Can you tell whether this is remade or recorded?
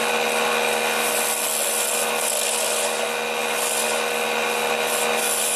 recorded